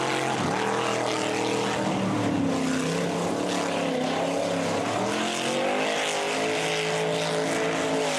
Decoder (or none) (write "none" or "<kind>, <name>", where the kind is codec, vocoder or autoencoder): none